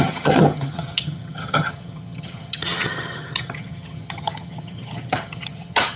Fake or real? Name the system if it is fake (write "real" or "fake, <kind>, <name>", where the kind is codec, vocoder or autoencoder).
fake, vocoder, HiFi-GAN